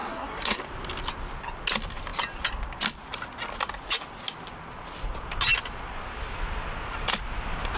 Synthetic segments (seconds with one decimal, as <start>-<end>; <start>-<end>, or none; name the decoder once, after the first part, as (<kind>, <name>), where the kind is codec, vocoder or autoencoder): 0.0-0.6 (codec, SNAC)